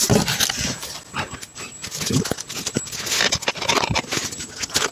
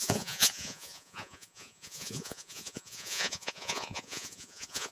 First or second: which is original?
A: first